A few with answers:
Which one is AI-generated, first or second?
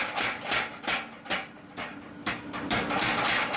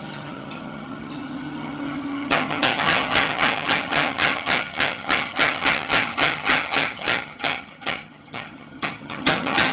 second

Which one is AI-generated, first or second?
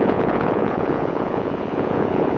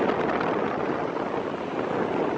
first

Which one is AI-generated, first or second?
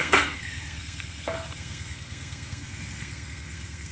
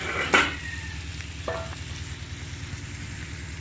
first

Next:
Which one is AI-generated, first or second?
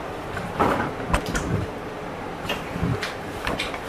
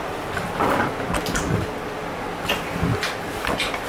first